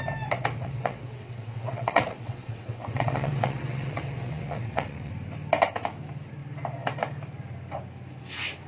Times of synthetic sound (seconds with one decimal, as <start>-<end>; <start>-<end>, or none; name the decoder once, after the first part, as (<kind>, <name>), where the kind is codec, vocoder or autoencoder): 0.6-5.1 (vocoder, WaveNeXt)